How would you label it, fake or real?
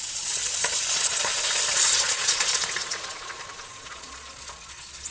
fake